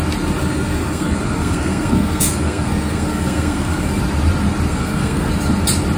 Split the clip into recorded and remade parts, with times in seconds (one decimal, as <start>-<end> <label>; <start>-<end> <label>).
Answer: 0.0-0.4 recorded; 0.4-4.0 remade; 4.0-4.7 recorded; 4.7-5.3 remade; 5.3-6.0 recorded